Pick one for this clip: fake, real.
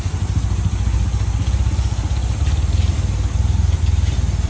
real